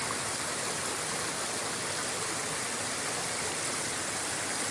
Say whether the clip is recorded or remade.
recorded